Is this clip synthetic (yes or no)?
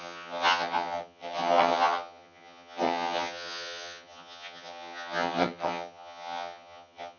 yes